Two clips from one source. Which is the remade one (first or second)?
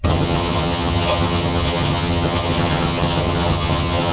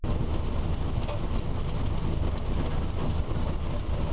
first